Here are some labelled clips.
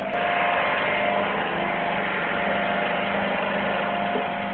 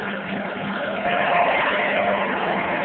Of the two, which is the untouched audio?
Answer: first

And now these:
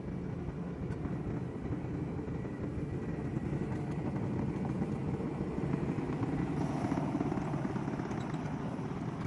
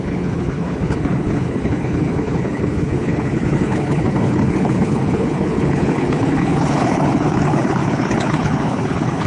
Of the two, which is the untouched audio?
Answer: first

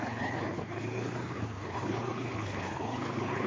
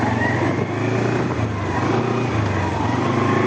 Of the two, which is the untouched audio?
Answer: second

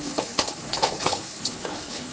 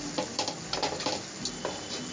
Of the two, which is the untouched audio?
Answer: second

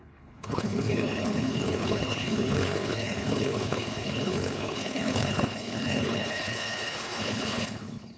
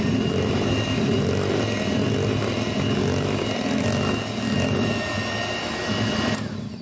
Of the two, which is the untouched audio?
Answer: second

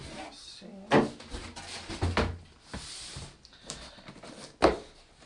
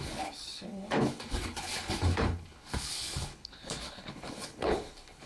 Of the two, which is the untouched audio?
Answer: first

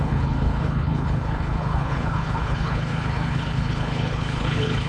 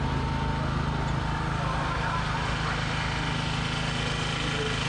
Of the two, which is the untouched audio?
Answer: second